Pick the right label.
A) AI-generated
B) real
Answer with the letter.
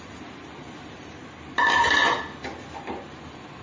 B